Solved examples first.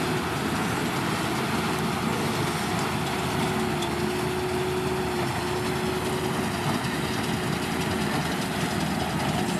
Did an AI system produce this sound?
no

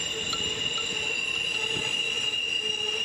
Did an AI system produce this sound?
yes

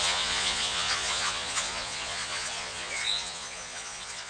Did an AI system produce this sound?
yes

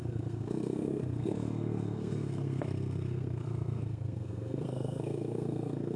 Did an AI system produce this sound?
yes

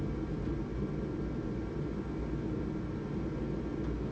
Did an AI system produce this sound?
no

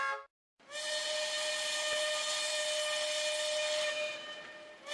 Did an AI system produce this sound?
no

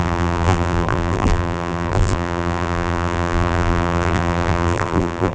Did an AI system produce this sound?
yes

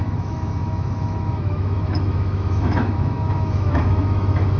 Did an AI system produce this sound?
yes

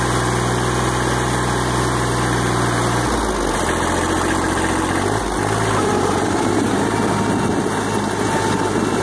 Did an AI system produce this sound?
no